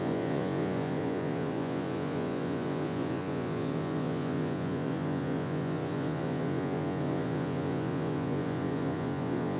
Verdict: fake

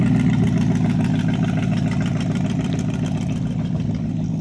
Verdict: real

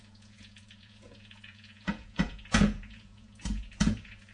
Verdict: fake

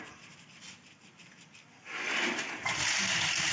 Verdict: real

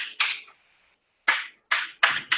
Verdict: real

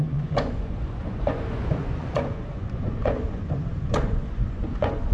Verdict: fake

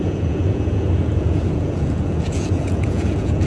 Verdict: fake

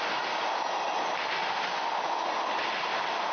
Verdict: real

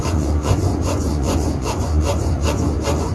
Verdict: fake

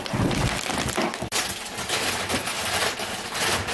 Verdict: real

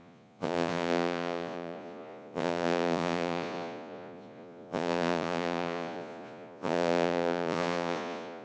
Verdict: fake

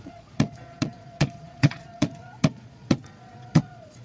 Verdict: fake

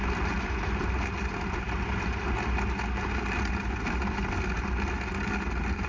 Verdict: real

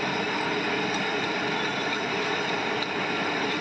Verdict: real